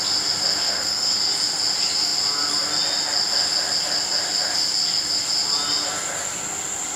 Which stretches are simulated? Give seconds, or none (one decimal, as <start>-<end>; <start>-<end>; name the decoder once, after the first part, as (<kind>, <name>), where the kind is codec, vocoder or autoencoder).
0.6-1.2 (codec, SNAC)